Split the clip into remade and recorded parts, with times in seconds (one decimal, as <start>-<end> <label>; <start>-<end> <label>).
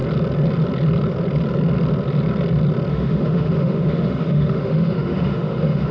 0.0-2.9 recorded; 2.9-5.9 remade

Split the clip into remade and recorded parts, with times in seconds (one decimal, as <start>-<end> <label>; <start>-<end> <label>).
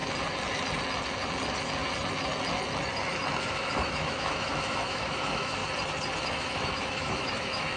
0.0-3.5 recorded; 3.5-5.6 remade; 5.6-6.2 recorded; 6.2-7.8 remade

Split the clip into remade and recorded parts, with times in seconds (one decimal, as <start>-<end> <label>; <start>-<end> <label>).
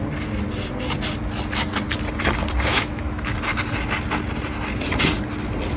0.0-2.7 recorded; 2.7-3.3 remade; 3.3-5.8 recorded